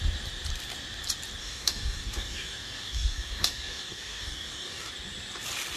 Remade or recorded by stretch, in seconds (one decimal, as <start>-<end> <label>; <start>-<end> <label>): 0.0-1.4 recorded; 1.4-4.9 remade; 4.9-5.8 recorded